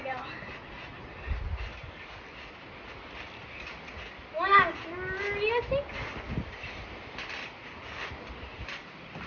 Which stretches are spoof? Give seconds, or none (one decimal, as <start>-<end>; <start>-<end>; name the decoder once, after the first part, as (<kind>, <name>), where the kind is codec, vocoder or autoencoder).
1.7-2.2 (codec, DAC)